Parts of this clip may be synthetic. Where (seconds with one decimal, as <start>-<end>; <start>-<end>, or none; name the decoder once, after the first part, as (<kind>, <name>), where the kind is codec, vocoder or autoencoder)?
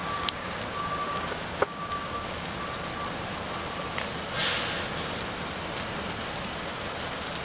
0.0-2.6 (codec, DAC)